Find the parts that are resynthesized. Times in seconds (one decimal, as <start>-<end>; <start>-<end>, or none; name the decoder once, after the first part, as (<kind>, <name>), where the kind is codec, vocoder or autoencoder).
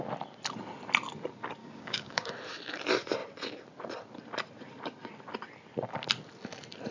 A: 1.6-2.3 (codec, DAC)